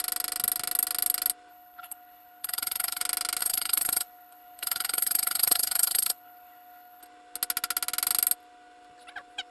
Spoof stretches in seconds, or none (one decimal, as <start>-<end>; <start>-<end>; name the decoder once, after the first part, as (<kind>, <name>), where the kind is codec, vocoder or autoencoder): 1.5-3.0 (codec, HILCodec); 3.4-7.0